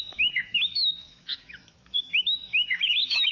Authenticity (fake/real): fake